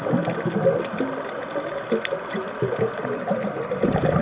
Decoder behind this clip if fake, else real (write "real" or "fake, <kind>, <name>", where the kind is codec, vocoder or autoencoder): fake, vocoder, BigVGAN v2